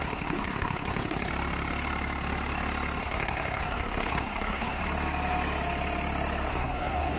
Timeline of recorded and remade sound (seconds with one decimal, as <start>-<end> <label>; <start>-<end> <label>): 0.0-1.3 remade; 1.3-3.0 recorded; 3.0-4.8 remade; 4.8-6.5 recorded; 6.5-7.2 remade